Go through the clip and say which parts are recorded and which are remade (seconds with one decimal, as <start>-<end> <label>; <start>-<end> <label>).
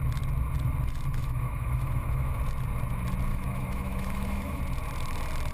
0.0-1.2 recorded; 1.2-2.4 remade; 2.4-3.3 recorded; 3.3-4.6 remade; 4.6-5.5 recorded